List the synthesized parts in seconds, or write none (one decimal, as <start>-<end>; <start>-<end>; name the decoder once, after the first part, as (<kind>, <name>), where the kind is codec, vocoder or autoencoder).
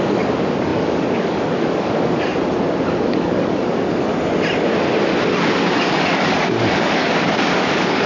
0.0-2.3 (codec, DAC); 2.9-4.1; 5.8-8.1